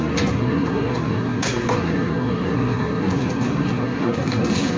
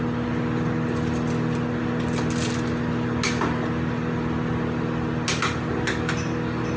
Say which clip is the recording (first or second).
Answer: second